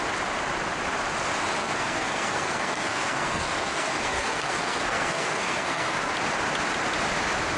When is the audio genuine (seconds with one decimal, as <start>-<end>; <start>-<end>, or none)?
0.0-1.6; 6.1-7.6